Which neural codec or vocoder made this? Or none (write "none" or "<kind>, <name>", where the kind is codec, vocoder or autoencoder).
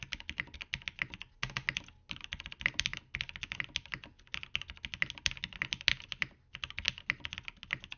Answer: none